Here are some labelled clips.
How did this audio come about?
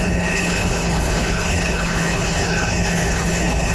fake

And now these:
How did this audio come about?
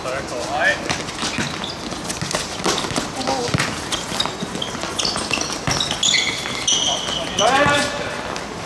real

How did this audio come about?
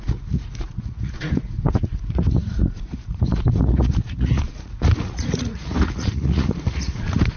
fake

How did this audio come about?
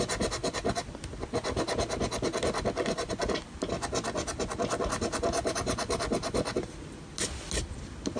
real